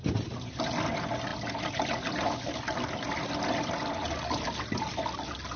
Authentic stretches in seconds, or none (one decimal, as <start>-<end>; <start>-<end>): 0.0-5.6